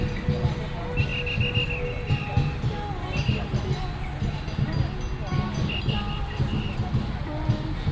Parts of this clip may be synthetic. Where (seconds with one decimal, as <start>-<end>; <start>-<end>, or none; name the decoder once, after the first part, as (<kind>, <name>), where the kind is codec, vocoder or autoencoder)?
5.2-7.9 (vocoder, BigVGAN v2)